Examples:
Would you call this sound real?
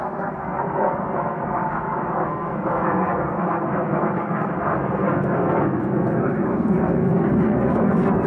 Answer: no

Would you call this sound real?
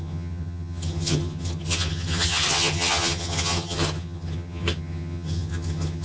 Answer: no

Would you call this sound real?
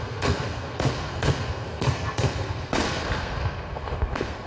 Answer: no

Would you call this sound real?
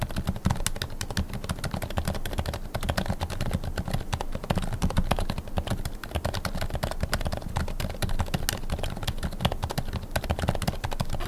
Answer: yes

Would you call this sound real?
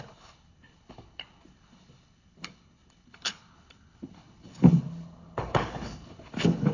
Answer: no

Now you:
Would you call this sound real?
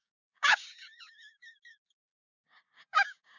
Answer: no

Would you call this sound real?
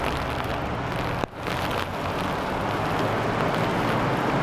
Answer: yes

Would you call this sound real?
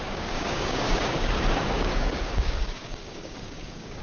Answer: no